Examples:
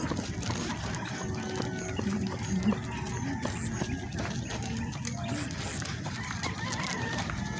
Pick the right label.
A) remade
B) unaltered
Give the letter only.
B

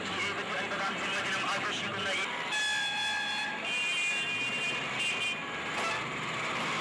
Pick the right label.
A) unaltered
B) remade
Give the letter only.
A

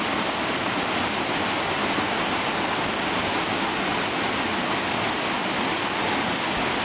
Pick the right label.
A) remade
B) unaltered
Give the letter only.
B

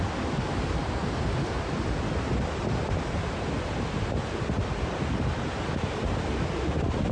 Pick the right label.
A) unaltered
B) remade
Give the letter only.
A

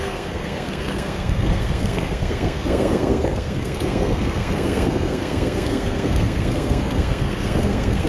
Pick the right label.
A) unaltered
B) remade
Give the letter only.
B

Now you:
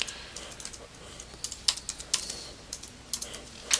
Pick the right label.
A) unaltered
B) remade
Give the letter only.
A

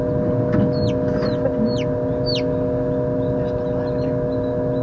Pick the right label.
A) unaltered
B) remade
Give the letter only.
A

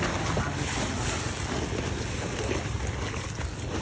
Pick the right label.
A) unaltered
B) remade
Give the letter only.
A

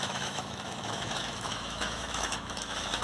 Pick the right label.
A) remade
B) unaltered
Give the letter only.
A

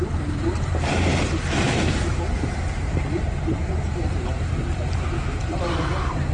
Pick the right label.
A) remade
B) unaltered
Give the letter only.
A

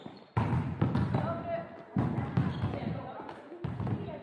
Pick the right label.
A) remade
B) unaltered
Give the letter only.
B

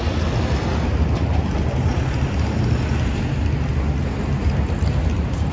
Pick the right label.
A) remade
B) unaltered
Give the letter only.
B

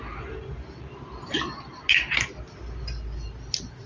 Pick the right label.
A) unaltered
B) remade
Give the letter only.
A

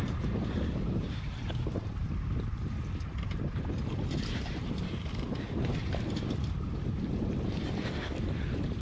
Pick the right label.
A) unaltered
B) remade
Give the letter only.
B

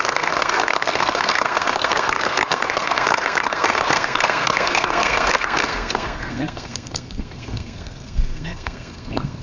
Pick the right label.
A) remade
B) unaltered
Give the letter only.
A